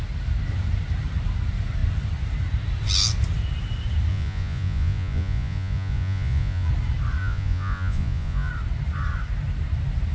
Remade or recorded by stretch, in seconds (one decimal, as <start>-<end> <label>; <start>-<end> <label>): 0.0-4.1 recorded; 4.1-6.7 remade; 6.7-7.2 recorded; 7.2-8.5 remade; 8.5-10.1 recorded